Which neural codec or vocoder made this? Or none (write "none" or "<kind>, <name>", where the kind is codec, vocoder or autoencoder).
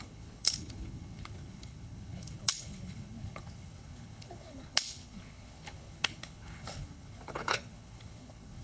codec, HILCodec